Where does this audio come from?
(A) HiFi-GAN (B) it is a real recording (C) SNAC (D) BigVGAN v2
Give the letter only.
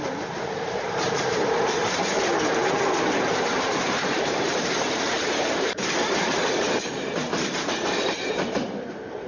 D